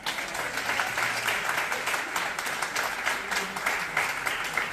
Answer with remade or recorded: recorded